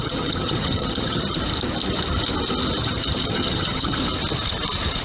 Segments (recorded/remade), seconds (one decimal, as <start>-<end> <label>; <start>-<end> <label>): 0.0-1.4 remade; 1.4-2.8 recorded; 2.8-4.0 remade; 4.0-5.0 recorded